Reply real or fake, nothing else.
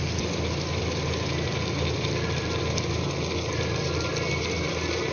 real